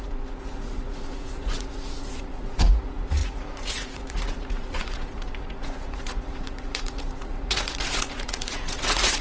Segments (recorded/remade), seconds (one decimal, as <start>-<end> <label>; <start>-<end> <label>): 0.0-9.2 remade